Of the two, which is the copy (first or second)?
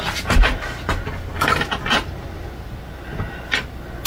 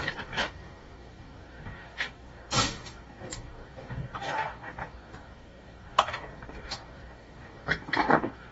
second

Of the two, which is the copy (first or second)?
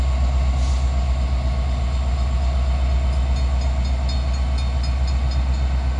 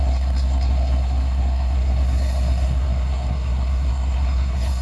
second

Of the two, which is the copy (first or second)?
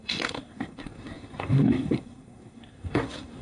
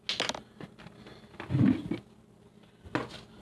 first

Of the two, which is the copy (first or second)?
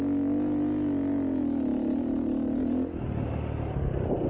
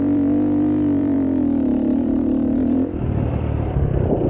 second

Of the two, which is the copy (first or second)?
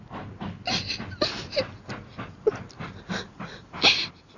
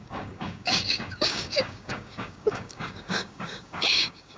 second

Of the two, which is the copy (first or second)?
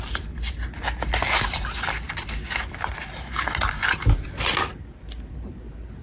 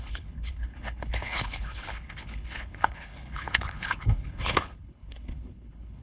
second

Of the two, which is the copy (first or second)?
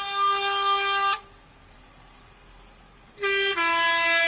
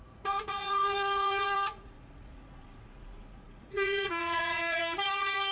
second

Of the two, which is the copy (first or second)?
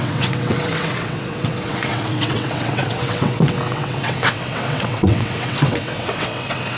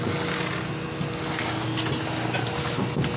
first